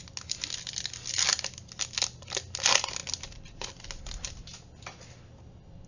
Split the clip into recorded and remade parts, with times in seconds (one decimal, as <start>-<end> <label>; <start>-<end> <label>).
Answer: 0.0-5.9 recorded